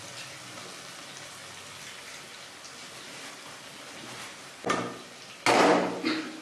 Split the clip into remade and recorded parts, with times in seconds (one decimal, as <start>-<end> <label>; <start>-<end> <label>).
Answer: 0.0-6.4 recorded